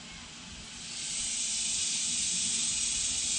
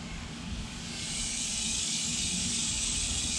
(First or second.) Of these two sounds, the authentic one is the first